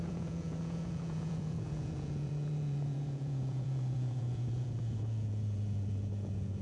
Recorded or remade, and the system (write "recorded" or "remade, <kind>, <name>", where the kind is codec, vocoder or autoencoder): remade, vocoder, Vocos